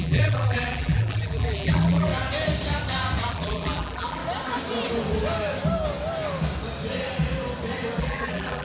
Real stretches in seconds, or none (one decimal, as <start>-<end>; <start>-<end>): 2.1-3.3; 4.2-8.0